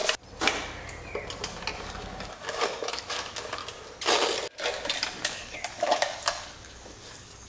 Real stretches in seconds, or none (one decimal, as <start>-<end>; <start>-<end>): 0.0-1.8; 3.6-5.2

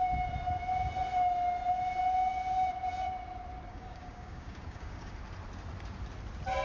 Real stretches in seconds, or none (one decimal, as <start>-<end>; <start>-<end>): 0.0-3.7; 5.1-6.6

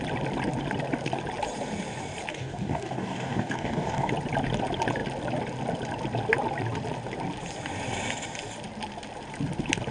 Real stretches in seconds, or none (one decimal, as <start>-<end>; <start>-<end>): 0.0-2.3; 4.1-9.9

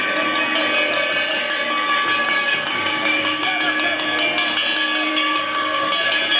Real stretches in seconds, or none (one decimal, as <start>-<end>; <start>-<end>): 0.0-2.2; 3.5-5.1; 5.9-6.4

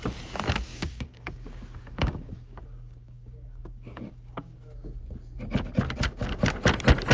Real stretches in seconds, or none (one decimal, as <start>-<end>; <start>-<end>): 0.0-0.7; 5.0-7.1

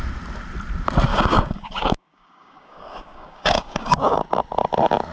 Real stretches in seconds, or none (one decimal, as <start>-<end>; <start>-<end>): 0.0-1.1; 4.2-5.1